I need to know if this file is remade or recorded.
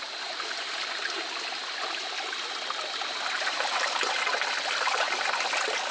recorded